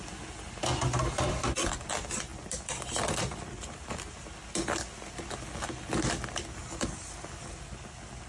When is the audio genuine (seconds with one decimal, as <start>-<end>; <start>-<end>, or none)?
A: 0.0-8.3